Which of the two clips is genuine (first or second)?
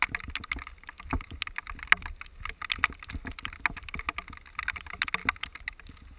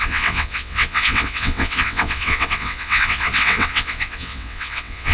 first